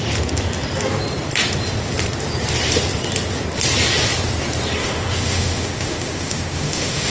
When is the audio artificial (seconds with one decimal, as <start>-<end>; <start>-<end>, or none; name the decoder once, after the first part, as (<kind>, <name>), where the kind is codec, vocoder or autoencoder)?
4.8-7.1 (autoencoder, DAC-VAE)